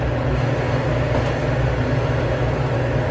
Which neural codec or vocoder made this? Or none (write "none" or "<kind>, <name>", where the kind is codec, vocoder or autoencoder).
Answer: none